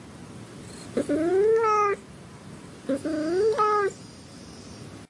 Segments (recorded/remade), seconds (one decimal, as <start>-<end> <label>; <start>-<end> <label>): 0.0-5.1 recorded